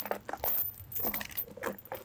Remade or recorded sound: recorded